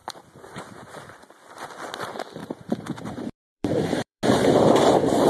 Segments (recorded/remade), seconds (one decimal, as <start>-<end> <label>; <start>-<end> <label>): 0.0-0.9 remade; 0.9-2.4 recorded; 2.4-4.2 remade; 4.2-5.3 recorded

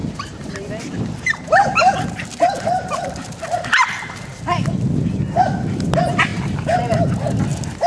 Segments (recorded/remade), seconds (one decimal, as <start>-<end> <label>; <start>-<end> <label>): 0.0-0.7 remade; 0.7-1.6 recorded; 1.6-3.3 remade; 3.3-6.3 recorded; 6.3-7.4 remade; 7.4-7.9 recorded

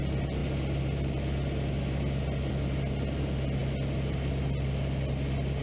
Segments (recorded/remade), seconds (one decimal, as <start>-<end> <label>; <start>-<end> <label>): 0.0-5.6 recorded

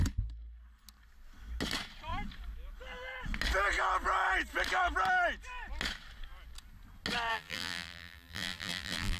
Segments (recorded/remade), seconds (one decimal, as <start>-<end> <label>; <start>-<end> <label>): 0.0-7.3 recorded; 7.3-9.2 remade

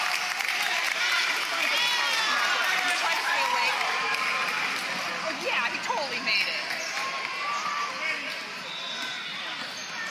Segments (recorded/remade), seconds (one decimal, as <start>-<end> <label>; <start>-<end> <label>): 0.0-10.1 recorded

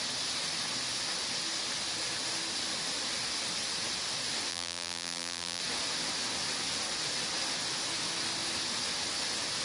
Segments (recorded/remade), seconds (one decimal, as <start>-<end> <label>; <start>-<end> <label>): 0.0-4.5 recorded; 4.5-5.6 remade; 5.6-9.6 recorded

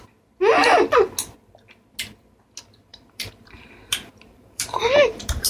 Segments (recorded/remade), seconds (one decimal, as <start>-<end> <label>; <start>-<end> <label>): 0.0-2.9 recorded; 2.9-5.5 remade